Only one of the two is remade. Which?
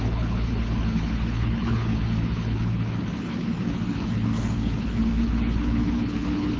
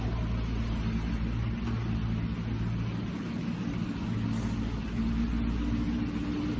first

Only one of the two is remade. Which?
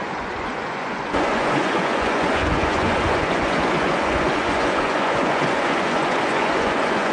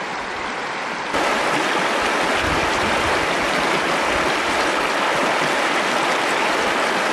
first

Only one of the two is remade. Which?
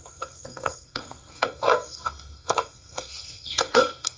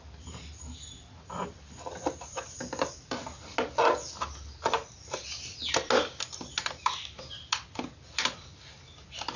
first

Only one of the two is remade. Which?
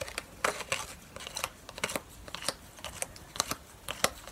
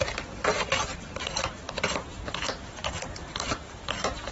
second